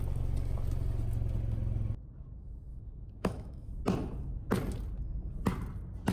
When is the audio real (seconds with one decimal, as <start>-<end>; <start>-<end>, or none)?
0.0-2.7; 3.7-6.1

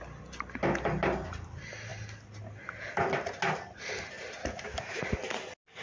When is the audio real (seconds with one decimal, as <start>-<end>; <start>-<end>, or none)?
0.0-4.4; 5.0-5.8

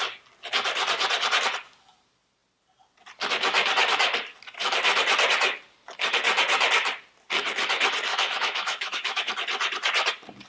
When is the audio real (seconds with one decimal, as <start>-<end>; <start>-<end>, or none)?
0.0-8.1; 9.3-10.5

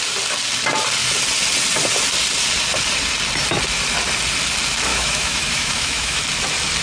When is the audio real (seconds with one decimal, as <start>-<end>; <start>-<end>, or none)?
0.0-4.9; 6.2-6.8